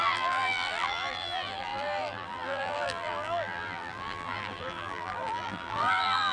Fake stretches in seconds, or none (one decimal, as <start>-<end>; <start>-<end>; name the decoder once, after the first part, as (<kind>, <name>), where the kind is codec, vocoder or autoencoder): 0.0-6.3 (vocoder, BigVGAN v2)